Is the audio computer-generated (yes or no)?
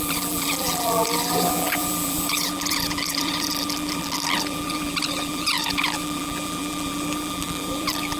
yes